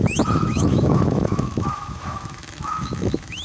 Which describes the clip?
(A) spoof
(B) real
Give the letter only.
A